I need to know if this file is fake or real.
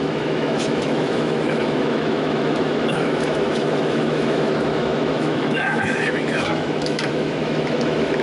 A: fake